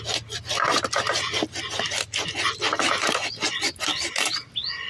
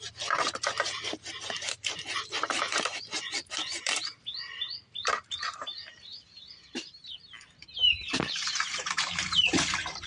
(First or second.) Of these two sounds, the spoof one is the second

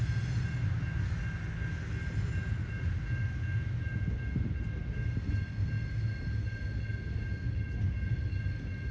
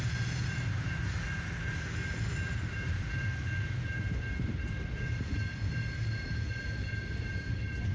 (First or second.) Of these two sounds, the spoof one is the second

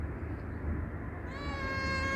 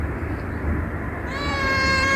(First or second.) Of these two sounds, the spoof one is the second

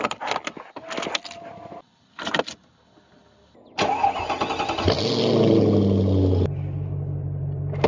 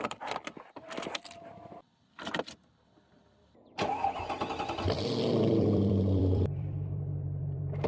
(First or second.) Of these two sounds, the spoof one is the second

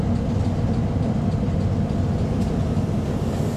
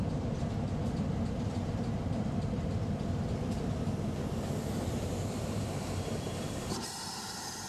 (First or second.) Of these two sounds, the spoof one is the second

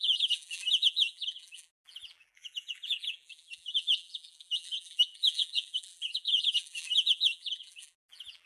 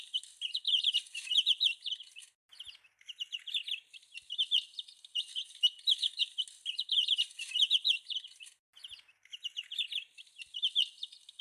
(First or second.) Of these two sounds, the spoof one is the first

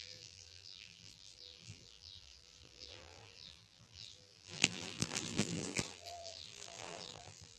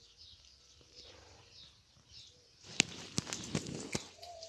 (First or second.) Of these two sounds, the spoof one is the first